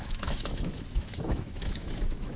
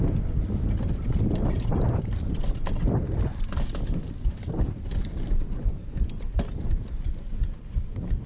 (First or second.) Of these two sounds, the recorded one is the second